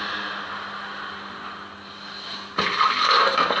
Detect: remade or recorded recorded